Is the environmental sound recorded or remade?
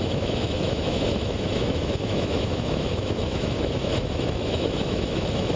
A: remade